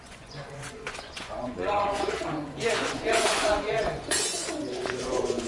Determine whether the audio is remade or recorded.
remade